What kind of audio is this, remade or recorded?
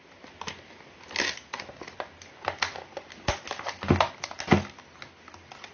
recorded